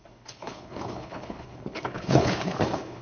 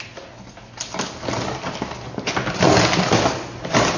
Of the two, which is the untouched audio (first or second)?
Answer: second